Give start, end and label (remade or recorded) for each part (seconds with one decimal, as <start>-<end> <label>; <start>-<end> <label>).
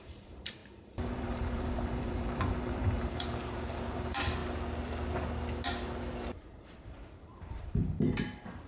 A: 0.0-4.4 remade; 4.4-6.4 recorded; 6.4-8.7 remade